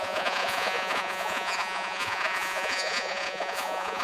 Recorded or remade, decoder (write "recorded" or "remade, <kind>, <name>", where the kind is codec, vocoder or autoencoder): remade, vocoder, Vocos